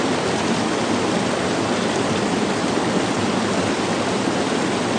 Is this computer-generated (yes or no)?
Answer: no